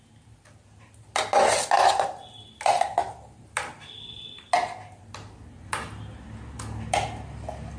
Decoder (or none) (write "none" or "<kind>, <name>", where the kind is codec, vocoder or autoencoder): none